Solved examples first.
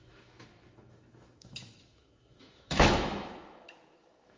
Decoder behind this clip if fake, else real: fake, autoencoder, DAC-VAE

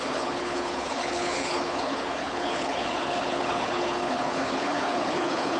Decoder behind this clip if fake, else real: fake, codec, HILCodec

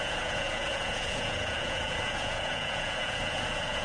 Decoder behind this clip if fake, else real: fake, vocoder, Vocos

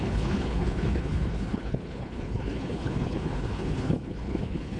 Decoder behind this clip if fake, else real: fake, codec, HILCodec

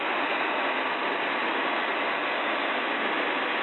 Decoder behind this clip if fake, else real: real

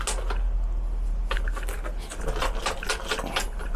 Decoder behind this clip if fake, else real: real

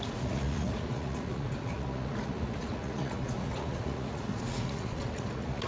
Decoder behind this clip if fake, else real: fake, vocoder, Vocos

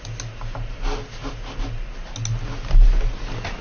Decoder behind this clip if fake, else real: real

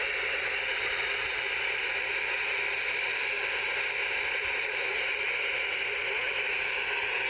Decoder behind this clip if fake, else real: real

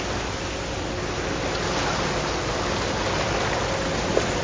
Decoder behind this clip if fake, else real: real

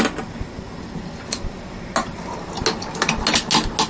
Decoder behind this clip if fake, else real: real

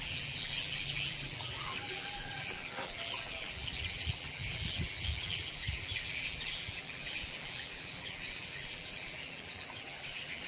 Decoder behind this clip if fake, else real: fake, vocoder, BigVGAN v2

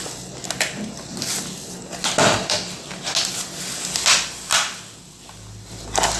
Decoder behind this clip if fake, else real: real